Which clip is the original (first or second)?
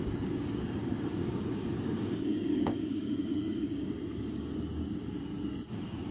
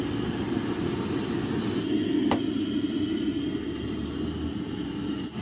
second